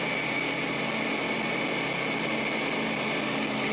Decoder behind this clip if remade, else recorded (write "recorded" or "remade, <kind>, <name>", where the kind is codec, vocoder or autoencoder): recorded